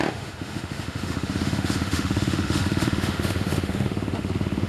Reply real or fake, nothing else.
fake